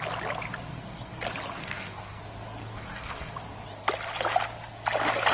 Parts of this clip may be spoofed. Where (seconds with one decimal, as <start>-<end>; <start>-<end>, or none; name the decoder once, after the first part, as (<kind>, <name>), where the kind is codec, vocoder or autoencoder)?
0.7-1.2 (codec, SNAC); 1.6-2.2; 2.6-3.3